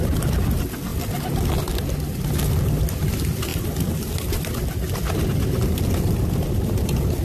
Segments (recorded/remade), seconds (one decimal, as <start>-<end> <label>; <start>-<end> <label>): 0.0-7.2 recorded